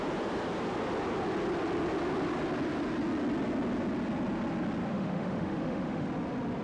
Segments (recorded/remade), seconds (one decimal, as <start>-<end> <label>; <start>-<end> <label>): 0.0-4.9 recorded; 4.9-6.1 remade; 6.1-6.6 recorded